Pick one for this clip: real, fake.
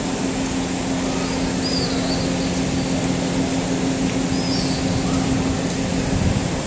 real